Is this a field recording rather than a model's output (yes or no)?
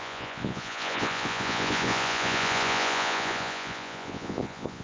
no